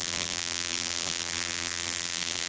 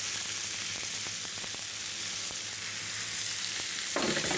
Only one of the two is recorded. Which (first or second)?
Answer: second